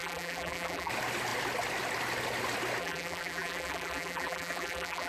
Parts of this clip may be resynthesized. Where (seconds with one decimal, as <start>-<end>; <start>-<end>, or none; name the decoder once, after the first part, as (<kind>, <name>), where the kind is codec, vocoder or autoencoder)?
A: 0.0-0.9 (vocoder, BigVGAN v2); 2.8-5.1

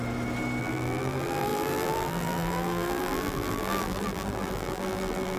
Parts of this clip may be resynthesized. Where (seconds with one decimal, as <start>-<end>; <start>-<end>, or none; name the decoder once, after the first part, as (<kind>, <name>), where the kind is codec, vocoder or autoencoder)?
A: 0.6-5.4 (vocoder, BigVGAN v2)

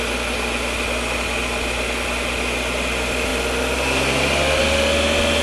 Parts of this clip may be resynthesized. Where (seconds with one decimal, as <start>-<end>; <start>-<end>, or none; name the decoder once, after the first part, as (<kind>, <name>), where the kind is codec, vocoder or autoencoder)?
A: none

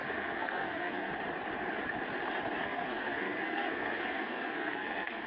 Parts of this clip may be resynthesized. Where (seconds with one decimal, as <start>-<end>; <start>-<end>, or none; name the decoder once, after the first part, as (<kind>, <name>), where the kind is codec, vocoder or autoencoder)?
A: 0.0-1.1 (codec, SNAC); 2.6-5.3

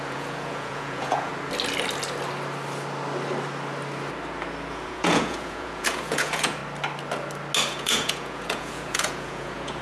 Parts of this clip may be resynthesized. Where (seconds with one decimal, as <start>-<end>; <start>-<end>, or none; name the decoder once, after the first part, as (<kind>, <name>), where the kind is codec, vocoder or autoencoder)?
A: 0.0-1.3 (vocoder, Vocos); 4.7-6.6; 7.7-9.8